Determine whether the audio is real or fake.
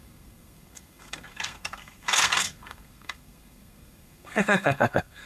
fake